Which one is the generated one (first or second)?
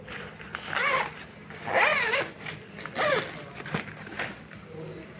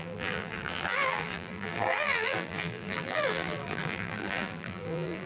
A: second